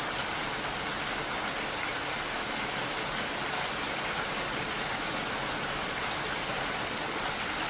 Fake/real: real